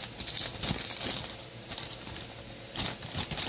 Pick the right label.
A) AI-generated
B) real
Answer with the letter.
B